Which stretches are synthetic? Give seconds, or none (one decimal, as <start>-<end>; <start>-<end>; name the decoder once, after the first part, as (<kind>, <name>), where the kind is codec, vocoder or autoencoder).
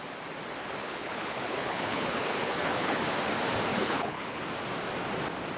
0.8-3.0 (codec, HILCodec); 3.7-4.4